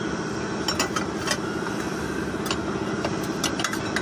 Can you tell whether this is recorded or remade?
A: recorded